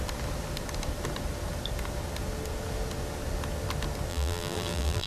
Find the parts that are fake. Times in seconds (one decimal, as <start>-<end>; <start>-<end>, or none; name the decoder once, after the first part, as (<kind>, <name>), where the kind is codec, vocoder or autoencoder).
4.1-5.1 (vocoder, BigVGAN v2)